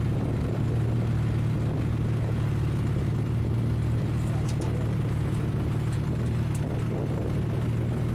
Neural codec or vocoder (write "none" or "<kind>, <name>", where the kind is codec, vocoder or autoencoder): none